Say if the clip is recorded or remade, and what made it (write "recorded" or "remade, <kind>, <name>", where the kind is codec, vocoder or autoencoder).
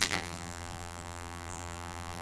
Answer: remade, vocoder, BigVGAN v2